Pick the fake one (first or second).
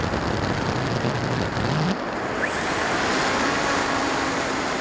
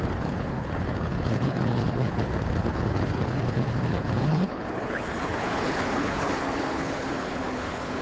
second